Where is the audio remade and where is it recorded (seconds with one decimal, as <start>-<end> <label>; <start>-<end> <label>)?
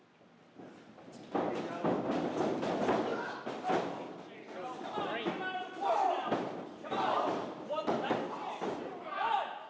0.0-9.7 recorded